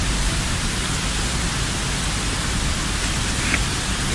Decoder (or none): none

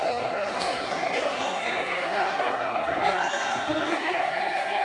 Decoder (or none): codec, SNAC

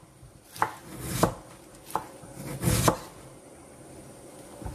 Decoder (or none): none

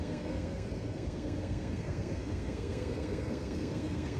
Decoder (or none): codec, SNAC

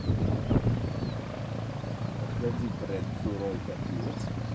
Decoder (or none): none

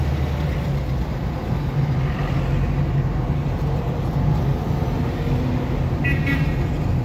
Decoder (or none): none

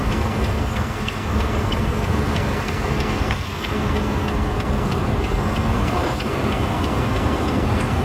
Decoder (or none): codec, SNAC